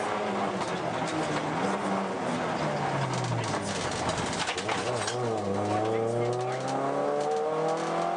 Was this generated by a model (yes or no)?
no